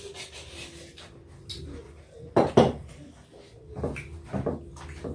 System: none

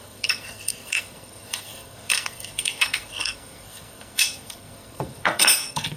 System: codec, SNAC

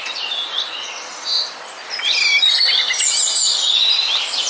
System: none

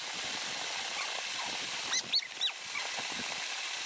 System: none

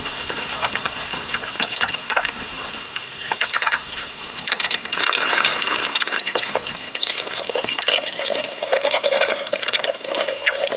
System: codec, SNAC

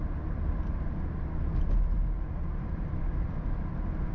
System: none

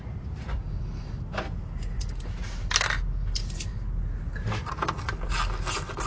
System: none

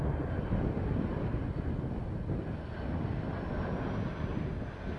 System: none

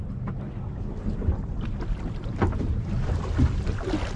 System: none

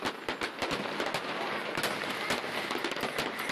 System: none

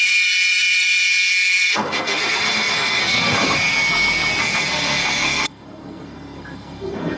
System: codec, SNAC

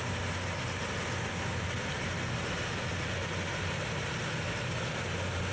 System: none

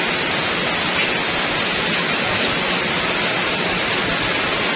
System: none